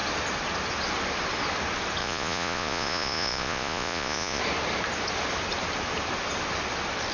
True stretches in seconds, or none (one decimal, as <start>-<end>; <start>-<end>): 0.0-2.0; 4.4-7.1